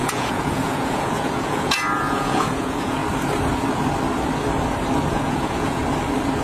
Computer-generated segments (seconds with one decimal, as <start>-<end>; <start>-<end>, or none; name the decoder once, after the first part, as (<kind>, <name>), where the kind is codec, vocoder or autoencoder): 0.0-3.0 (vocoder, Vocos); 5.1-5.8